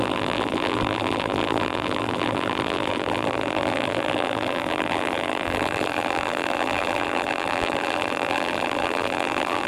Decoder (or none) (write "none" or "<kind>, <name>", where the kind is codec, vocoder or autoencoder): vocoder, BigVGAN v2